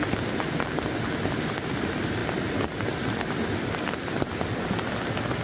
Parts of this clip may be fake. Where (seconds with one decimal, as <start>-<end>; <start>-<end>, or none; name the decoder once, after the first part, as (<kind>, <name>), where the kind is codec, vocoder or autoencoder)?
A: none